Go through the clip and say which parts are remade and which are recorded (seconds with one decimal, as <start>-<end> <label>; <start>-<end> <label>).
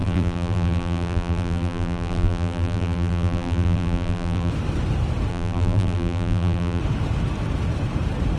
0.0-4.5 remade; 4.5-5.3 recorded; 5.3-6.8 remade; 6.8-8.4 recorded